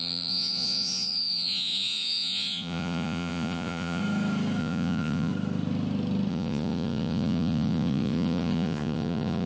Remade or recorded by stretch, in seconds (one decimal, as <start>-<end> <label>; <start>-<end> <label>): 0.0-4.0 remade; 4.0-4.6 recorded; 4.6-5.3 remade; 5.3-6.3 recorded; 6.3-9.5 remade